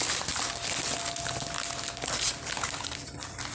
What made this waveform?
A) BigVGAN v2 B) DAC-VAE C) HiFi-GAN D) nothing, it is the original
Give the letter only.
D